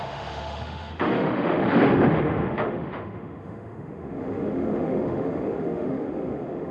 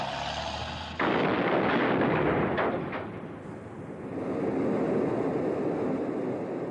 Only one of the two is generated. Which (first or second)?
first